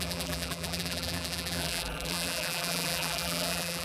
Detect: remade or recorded remade